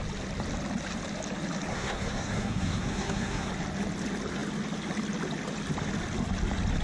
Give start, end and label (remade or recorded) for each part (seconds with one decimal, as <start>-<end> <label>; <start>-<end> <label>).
0.0-1.7 recorded; 1.7-3.5 remade; 3.5-6.8 recorded